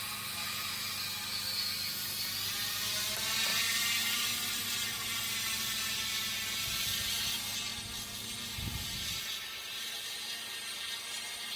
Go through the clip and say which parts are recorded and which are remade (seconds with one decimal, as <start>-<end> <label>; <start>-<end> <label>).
0.0-3.5 recorded; 3.5-4.6 remade; 4.6-11.6 recorded